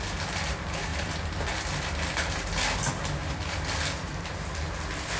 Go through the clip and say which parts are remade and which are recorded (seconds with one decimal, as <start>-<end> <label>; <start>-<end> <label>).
0.0-5.2 recorded